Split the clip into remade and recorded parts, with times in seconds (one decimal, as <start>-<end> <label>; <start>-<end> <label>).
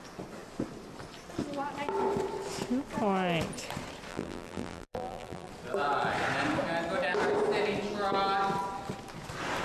0.0-4.1 recorded; 4.1-5.5 remade; 5.5-9.6 recorded